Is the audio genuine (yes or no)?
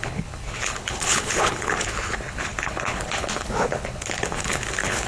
no